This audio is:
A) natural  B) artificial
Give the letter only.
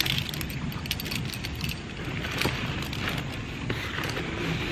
A